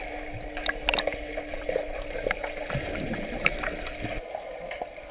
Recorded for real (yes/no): yes